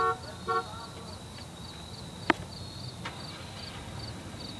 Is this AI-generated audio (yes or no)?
no